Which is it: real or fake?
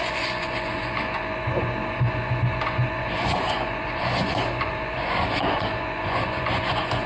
fake